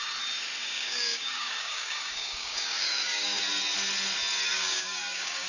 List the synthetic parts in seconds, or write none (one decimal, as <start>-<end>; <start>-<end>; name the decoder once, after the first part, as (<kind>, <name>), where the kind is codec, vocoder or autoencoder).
0.6-3.4 (codec, DAC); 4.5-5.5